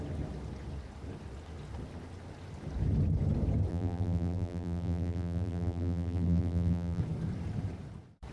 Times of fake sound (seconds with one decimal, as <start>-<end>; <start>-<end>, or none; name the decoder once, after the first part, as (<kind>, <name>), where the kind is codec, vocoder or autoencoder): 3.7-7.0 (vocoder, BigVGAN v2)

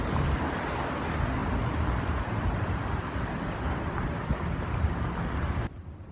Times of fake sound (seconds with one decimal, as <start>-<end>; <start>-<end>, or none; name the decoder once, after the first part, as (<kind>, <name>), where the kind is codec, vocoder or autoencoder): 1.4-5.0 (vocoder, BigVGAN v2)

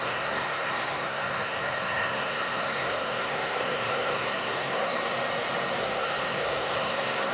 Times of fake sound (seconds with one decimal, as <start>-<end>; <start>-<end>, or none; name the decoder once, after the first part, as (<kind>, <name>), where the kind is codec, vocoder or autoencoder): 0.0-5.0 (codec, SNAC); 5.8-7.3

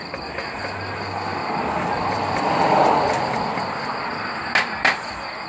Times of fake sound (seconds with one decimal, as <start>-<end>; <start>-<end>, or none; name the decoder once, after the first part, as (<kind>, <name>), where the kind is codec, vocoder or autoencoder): none

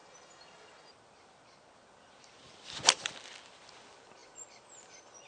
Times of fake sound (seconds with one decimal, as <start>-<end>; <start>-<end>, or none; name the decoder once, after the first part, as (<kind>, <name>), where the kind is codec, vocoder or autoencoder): none

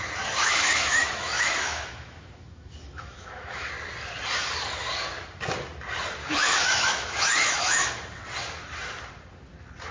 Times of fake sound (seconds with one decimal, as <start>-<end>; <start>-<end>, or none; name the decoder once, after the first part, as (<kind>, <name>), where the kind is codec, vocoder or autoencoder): 0.4-3.7 (autoencoder, DAC-VAE); 6.2-7.9

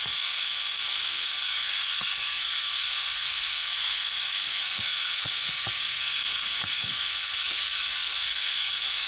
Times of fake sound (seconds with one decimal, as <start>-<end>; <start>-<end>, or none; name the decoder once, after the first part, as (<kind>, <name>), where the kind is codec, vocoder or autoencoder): 0.0-9.1 (codec, SNAC)